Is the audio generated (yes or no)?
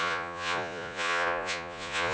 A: yes